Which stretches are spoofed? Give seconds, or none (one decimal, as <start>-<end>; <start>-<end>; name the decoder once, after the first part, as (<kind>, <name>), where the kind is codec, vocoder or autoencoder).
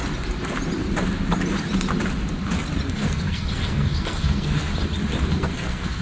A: 2.9-4.7 (codec, SNAC); 5.3-6.0